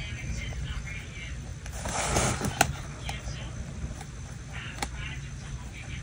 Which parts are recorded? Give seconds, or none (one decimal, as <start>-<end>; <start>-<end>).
0.0-6.0